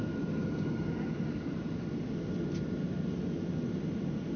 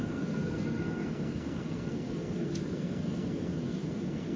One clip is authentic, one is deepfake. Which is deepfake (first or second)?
second